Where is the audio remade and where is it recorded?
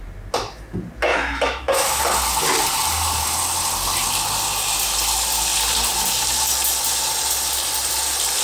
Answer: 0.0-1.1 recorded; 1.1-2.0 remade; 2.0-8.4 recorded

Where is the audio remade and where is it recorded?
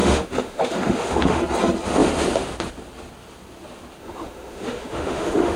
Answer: 0.0-1.4 remade; 1.4-4.0 recorded; 4.0-5.6 remade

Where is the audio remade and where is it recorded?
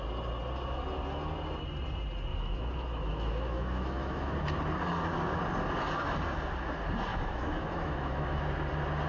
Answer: 0.0-2.3 recorded; 2.3-4.3 remade; 4.3-7.1 recorded; 7.1-8.4 remade; 8.4-9.1 recorded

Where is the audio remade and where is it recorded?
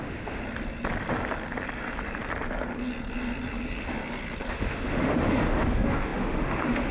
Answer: 0.0-0.4 remade; 0.4-4.5 recorded; 4.5-6.9 remade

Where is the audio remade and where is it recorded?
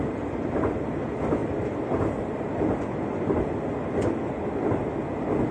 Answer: 0.0-5.5 recorded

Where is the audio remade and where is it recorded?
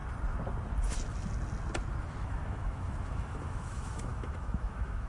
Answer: 0.0-2.0 recorded; 2.0-5.1 remade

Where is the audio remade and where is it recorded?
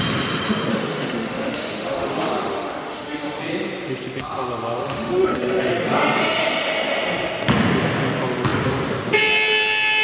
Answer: 0.0-0.7 recorded; 0.7-3.4 remade; 3.4-4.8 recorded; 4.8-5.7 remade; 5.7-10.0 recorded